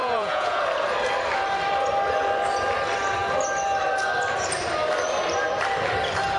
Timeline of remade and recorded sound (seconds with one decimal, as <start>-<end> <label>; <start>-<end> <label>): 0.0-0.6 remade; 0.6-6.4 recorded